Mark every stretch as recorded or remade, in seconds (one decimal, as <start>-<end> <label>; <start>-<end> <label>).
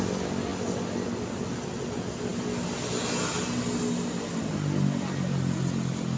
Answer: 0.0-6.2 recorded